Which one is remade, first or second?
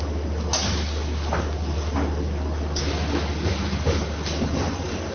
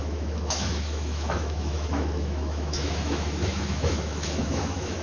second